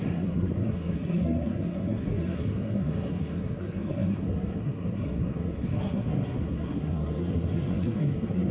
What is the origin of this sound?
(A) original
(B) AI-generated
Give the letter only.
B